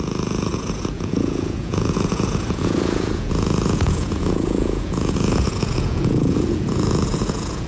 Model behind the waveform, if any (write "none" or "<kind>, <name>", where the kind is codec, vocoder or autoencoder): vocoder, Vocos